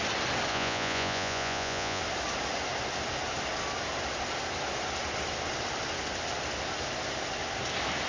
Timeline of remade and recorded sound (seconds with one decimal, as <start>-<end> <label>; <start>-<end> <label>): 0.0-0.5 recorded; 0.5-2.0 remade; 2.0-8.1 recorded